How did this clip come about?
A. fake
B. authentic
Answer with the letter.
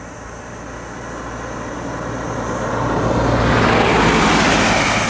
B